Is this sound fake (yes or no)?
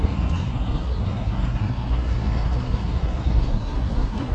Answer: yes